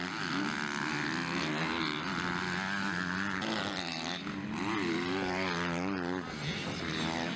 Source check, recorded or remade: recorded